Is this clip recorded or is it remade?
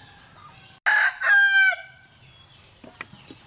recorded